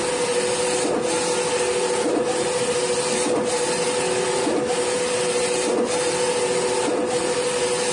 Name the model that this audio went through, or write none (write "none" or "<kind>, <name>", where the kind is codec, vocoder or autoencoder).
none